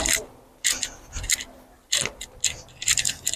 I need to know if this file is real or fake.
real